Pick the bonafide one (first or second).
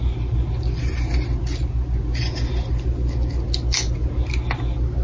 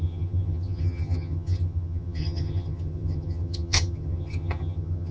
first